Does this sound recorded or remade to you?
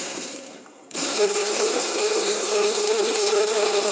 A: remade